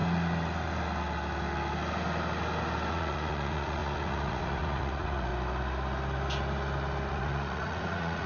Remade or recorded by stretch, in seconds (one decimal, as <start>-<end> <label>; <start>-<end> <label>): 0.0-2.9 recorded; 2.9-5.3 remade; 5.3-7.1 recorded; 7.1-8.3 remade